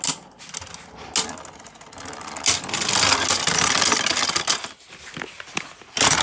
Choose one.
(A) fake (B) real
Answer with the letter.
B